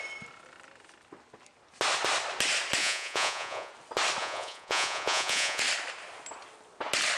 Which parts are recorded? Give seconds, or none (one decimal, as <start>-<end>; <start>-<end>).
0.0-2.8; 3.7-4.2; 5.6-7.2